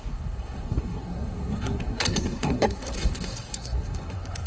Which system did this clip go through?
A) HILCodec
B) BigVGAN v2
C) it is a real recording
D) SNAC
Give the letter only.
D